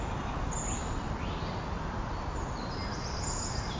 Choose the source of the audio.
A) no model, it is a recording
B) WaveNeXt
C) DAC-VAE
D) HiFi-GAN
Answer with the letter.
A